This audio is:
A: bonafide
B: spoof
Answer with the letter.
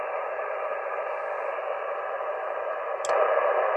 A